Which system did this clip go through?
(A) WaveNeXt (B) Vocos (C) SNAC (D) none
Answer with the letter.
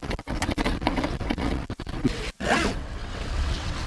A